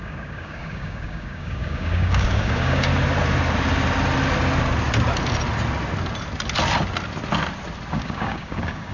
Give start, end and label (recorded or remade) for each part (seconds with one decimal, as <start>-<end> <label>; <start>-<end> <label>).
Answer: 0.0-2.9 remade; 2.9-7.9 recorded; 7.9-8.9 remade